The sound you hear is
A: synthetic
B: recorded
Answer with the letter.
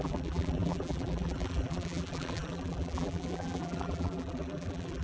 A